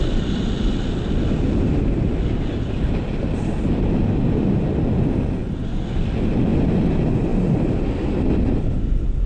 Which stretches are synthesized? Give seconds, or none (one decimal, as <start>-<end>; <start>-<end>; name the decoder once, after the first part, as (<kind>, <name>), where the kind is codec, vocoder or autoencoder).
none